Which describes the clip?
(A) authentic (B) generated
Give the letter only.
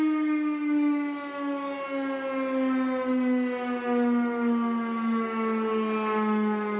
A